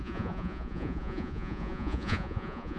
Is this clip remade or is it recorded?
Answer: remade